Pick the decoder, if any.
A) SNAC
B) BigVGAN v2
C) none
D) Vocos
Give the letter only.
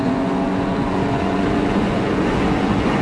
D